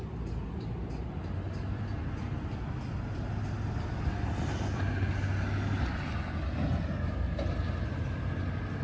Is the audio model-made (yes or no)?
no